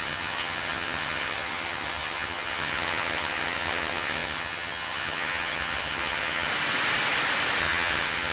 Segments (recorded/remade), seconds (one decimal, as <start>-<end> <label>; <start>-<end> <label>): 0.0-6.5 remade; 6.5-7.6 recorded; 7.6-8.3 remade